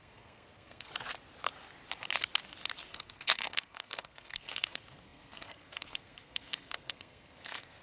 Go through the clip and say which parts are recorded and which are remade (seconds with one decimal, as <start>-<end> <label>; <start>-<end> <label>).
0.0-0.9 remade; 0.9-2.9 recorded; 2.9-7.8 remade